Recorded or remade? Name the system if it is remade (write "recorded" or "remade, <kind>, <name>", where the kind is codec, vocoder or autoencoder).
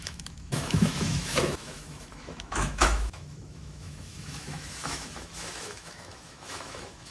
remade, autoencoder, DAC-VAE